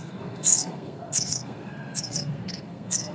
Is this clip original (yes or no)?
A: no